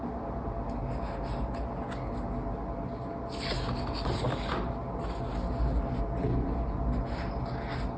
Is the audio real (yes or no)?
yes